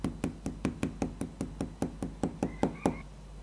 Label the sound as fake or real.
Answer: real